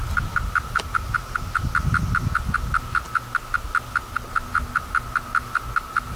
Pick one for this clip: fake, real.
real